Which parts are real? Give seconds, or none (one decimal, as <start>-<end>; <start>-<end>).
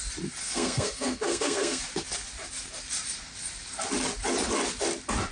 0.0-0.4; 1.8-5.3